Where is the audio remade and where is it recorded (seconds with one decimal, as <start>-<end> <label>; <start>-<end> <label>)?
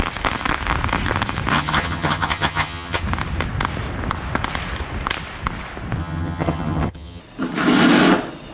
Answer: 0.0-1.5 recorded; 1.5-3.0 remade; 3.0-6.0 recorded; 6.0-7.2 remade; 7.2-8.5 recorded